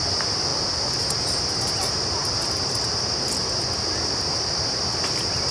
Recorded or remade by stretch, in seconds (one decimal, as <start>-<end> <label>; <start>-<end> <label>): 0.0-5.5 recorded